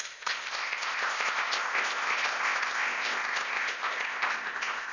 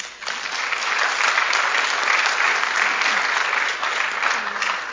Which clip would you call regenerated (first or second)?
first